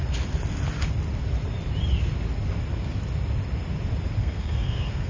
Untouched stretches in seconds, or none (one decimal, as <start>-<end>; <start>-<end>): 0.0-4.2

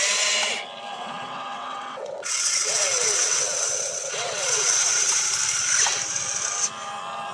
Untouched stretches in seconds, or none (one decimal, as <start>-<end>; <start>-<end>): 0.0-0.9; 5.3-7.3